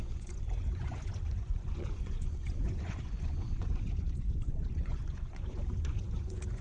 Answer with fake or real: fake